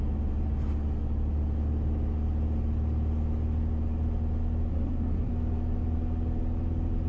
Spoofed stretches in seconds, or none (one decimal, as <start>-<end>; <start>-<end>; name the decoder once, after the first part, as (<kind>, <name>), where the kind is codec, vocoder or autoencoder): 4.7-5.3 (codec, SNAC)